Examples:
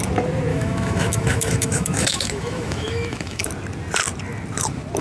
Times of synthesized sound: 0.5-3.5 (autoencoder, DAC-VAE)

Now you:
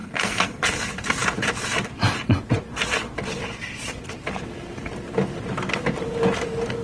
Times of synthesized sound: 0.0-0.6 (codec, SNAC)

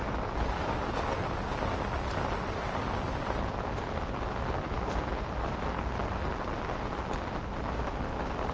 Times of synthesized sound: none

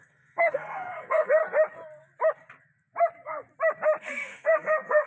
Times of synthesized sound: 0.0-1.4 (codec, SNAC); 4.0-5.1

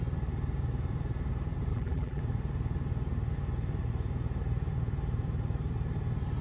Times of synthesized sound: 1.7-2.2 (vocoder, BigVGAN v2)